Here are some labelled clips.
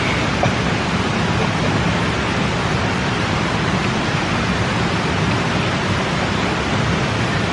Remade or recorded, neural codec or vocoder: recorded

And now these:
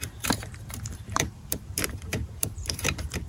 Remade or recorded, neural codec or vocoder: remade, vocoder, BigVGAN v2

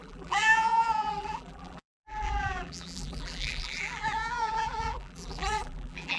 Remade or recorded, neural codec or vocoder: remade, vocoder, BigVGAN v2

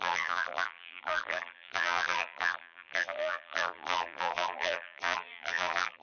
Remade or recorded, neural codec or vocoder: remade, vocoder, BigVGAN v2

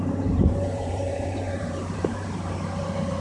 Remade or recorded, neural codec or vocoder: remade, vocoder, BigVGAN v2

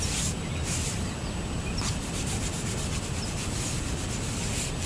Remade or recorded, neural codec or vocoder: recorded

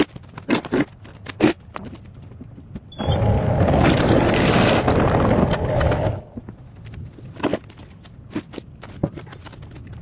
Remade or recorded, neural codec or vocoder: recorded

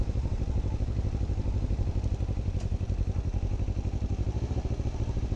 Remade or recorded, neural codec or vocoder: recorded